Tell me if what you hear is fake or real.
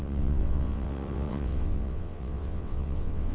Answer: fake